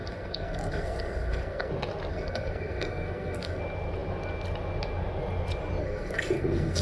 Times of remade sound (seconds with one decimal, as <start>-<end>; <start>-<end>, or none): 0.0-1.7; 2.1-3.6; 5.8-6.8